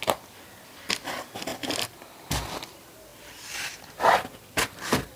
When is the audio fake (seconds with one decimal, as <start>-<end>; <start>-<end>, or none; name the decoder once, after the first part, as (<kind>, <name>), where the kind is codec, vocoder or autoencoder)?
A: 0.0-5.2 (vocoder, BigVGAN v2)